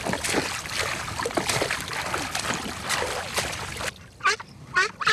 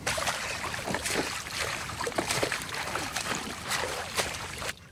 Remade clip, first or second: second